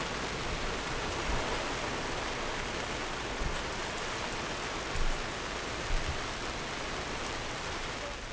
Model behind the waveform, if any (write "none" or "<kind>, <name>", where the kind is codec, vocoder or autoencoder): none